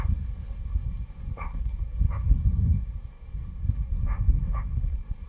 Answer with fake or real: fake